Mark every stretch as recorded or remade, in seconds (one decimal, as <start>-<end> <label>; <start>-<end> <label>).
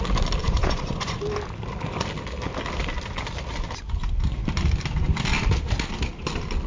0.0-0.4 recorded; 0.4-1.2 remade; 1.2-6.7 recorded